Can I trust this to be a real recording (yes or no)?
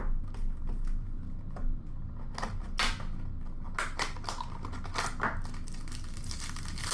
yes